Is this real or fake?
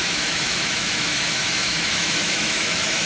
fake